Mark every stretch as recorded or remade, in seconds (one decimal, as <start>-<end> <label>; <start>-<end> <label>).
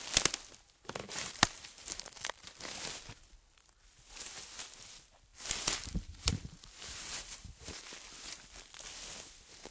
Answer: 0.0-1.0 recorded; 1.0-2.5 remade; 2.5-5.3 recorded; 5.3-7.8 remade; 7.8-9.7 recorded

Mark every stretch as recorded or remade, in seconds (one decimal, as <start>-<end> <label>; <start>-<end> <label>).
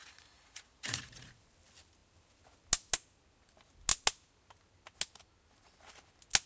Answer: 0.0-1.3 remade; 1.3-6.5 recorded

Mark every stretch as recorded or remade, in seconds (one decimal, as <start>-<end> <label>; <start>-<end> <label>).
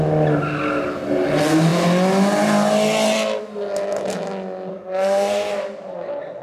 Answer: 0.0-4.7 recorded; 4.7-5.5 remade; 5.5-6.4 recorded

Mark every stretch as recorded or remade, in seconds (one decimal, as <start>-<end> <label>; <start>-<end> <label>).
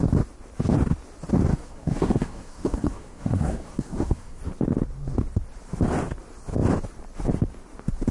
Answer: 0.0-1.5 recorded; 1.5-4.4 remade; 4.4-8.1 recorded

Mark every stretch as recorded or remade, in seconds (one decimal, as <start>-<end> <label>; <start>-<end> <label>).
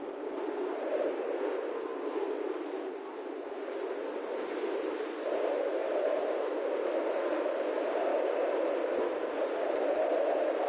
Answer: 0.0-1.9 recorded; 1.9-2.4 remade; 2.4-10.7 recorded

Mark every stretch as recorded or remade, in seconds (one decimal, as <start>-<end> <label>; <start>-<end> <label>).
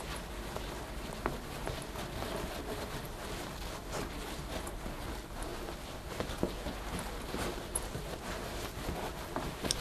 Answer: 0.0-9.8 recorded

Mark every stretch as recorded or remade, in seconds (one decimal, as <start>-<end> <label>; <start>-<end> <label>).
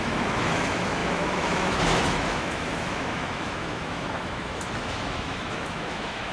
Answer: 0.0-6.3 remade